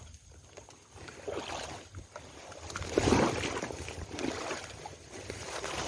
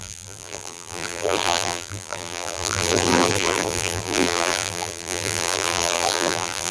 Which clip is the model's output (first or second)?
second